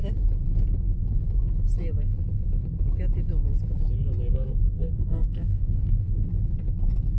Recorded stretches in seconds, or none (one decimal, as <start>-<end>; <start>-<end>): 0.0-4.3; 6.3-7.2